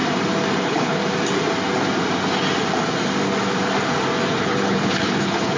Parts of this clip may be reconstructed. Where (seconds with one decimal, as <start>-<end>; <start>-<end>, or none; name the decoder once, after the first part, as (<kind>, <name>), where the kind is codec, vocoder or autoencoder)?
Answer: 0.6-1.0 (codec, HILCodec); 4.4-5.6